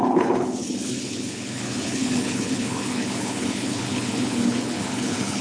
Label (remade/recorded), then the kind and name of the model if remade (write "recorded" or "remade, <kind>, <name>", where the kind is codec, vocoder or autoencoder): remade, codec, HILCodec